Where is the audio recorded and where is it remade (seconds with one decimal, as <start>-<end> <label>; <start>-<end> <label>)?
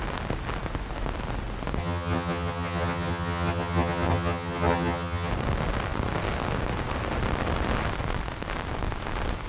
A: 0.0-1.8 recorded; 1.8-5.3 remade; 5.3-9.5 recorded